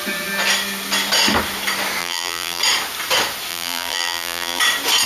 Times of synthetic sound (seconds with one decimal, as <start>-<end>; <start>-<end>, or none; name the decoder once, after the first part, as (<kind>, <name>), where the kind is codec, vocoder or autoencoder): 2.0-2.6 (vocoder, BigVGAN v2); 3.5-4.6